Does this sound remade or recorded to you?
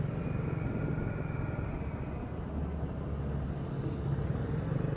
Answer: recorded